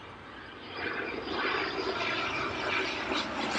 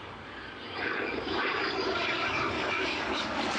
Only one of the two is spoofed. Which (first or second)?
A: second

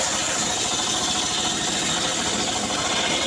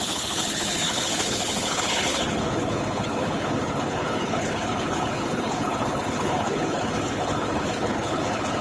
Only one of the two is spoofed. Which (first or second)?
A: second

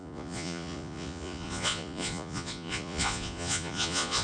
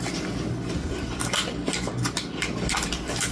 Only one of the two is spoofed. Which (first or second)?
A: first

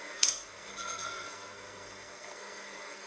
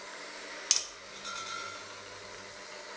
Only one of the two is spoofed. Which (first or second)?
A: first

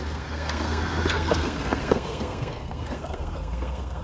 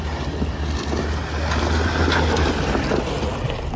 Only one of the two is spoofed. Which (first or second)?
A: first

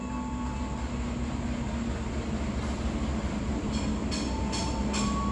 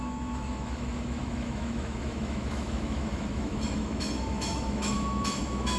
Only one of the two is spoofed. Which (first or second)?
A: second